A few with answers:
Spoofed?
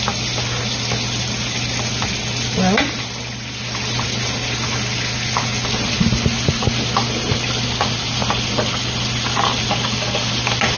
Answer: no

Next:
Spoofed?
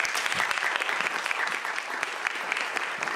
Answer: yes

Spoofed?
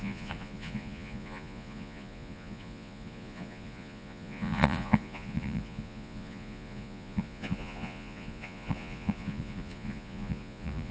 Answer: yes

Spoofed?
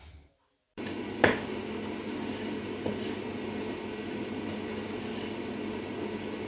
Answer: no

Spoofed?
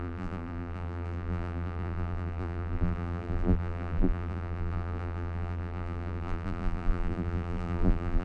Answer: yes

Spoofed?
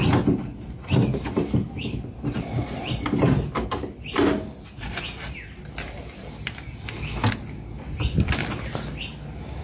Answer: no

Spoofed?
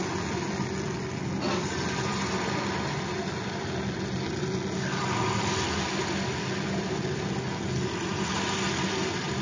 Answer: no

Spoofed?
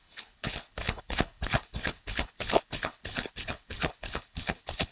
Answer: yes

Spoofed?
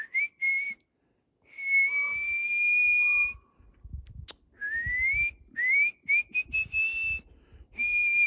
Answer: no